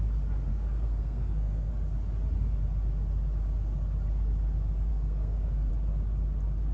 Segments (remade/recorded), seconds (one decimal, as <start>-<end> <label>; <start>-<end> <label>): 0.0-0.5 recorded; 0.5-1.7 remade; 1.7-4.9 recorded; 4.9-5.7 remade; 5.7-6.7 recorded